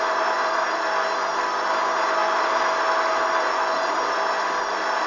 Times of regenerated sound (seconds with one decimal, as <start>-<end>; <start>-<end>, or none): none